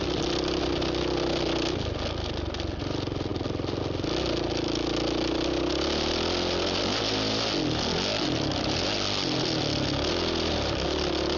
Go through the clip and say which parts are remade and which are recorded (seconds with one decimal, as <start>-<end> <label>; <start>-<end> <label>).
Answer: 0.0-11.4 recorded